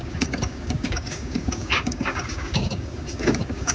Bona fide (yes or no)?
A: no